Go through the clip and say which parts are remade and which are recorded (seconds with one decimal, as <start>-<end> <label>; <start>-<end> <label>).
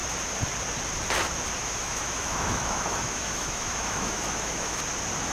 0.0-1.6 recorded; 1.6-4.8 remade; 4.8-5.3 recorded